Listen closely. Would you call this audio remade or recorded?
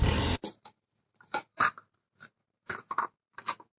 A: remade